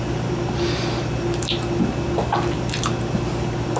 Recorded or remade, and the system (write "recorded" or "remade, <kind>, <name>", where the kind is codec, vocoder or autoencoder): recorded